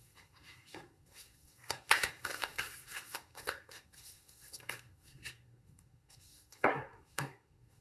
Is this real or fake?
fake